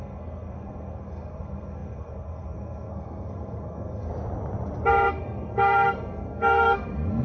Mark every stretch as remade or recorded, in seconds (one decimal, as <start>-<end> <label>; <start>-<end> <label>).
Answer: 0.0-4.1 remade; 4.1-4.9 recorded; 4.9-7.2 remade